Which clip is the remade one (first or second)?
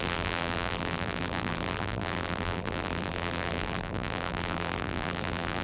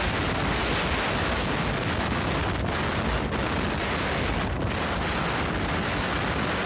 first